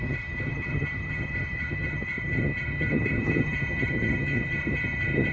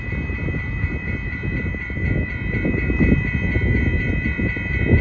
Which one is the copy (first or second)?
first